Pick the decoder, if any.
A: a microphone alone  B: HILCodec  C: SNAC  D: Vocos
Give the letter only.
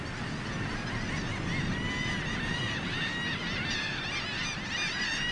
A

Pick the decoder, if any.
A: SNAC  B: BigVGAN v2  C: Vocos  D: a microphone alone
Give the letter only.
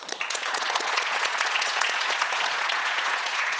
C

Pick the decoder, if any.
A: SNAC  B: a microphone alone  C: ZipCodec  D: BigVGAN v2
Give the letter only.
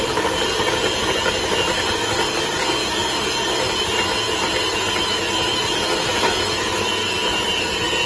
B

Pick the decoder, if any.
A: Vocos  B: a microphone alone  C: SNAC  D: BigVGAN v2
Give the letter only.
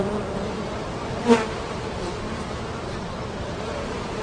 D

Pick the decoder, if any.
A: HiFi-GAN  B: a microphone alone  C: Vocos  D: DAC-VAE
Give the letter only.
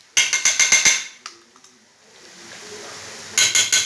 B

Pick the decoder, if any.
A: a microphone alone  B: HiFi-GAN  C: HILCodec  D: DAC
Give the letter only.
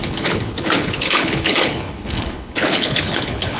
C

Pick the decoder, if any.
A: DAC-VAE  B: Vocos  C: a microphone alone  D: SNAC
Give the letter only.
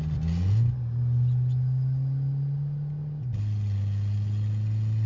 C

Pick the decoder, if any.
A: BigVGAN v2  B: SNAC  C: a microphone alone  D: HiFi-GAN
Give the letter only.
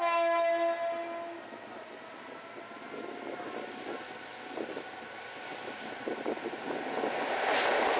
C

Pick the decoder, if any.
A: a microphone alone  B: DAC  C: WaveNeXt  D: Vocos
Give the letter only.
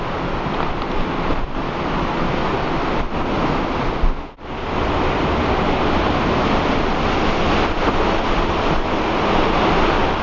A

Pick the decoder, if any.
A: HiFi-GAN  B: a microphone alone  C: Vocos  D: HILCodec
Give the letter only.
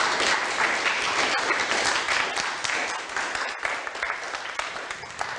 B